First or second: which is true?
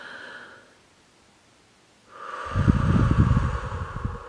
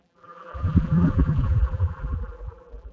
first